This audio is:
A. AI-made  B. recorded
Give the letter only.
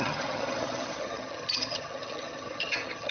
A